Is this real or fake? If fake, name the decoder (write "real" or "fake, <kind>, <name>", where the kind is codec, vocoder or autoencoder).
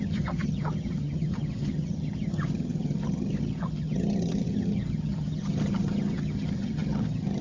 fake, vocoder, HiFi-GAN